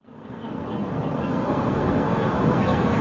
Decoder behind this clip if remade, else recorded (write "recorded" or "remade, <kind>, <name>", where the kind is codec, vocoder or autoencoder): remade, codec, SNAC